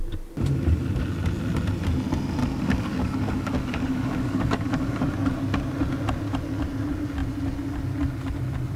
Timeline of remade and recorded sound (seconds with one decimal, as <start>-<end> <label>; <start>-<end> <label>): 0.0-2.4 recorded; 2.4-5.1 remade; 5.1-8.8 recorded